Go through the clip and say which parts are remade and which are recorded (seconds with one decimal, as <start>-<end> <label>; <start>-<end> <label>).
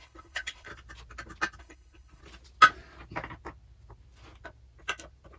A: 0.0-0.7 remade; 0.7-1.6 recorded; 1.6-2.2 remade; 2.2-5.4 recorded